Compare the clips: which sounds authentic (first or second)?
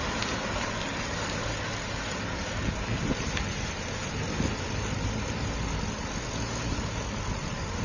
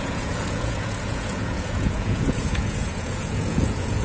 first